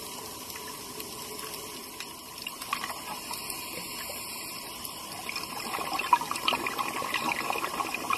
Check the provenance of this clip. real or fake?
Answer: real